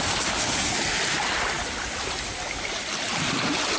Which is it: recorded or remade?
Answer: recorded